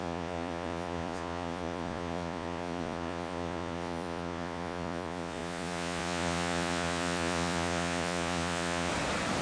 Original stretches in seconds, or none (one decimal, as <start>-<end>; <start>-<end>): 8.9-9.4